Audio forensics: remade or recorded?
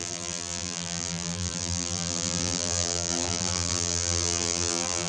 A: remade